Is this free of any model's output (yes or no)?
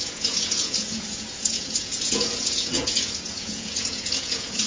no